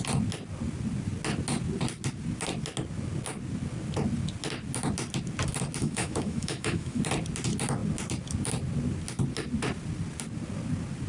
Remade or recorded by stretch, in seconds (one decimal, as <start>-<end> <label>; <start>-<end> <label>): 0.0-5.8 recorded; 5.8-7.0 remade; 7.0-11.1 recorded